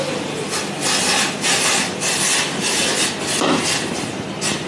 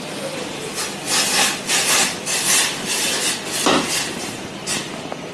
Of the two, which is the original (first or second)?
first